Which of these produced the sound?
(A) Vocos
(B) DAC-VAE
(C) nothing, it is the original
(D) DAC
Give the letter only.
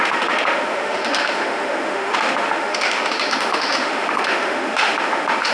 B